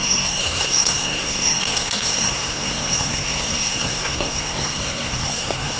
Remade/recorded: remade